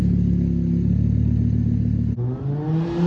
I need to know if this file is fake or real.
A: real